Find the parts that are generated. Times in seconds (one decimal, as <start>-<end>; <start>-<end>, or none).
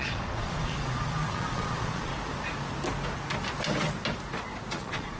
0.0-2.1; 4.7-5.2